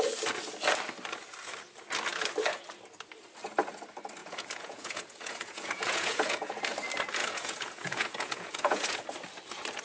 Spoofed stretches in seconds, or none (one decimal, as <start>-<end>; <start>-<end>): 4.2-6.6; 7.2-9.0